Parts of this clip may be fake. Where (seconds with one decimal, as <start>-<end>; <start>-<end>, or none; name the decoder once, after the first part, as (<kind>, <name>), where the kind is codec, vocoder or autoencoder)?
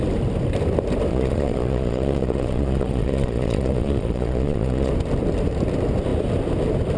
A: 1.1-4.9 (vocoder, Vocos)